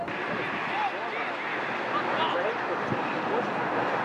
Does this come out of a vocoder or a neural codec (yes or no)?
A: no